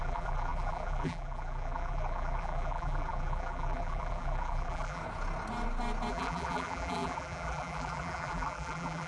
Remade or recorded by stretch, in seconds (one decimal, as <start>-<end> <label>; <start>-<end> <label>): 0.0-5.0 remade; 5.0-6.1 recorded; 6.1-9.1 remade